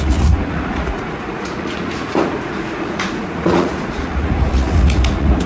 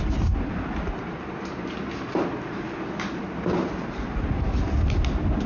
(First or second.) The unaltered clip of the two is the second